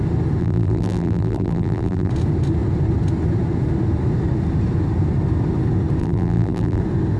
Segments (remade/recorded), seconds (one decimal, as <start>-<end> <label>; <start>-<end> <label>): 0.0-0.4 recorded; 0.4-2.1 remade; 2.1-6.0 recorded; 6.0-6.8 remade; 6.8-7.2 recorded